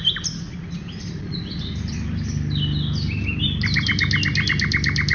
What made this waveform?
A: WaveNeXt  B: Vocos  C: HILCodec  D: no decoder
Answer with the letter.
D